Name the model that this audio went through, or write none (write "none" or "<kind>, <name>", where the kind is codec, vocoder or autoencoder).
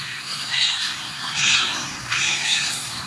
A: codec, SNAC